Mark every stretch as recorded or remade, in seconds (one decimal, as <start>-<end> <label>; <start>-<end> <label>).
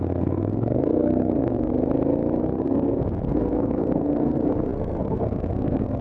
0.0-1.7 remade; 1.7-2.4 recorded; 2.4-6.0 remade